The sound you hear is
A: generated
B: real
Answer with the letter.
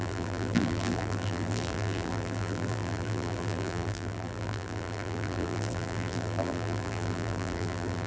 A